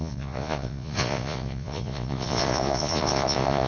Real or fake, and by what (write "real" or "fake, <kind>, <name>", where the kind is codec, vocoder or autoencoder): fake, vocoder, Vocos